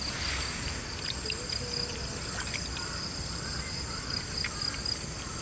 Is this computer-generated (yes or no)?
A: no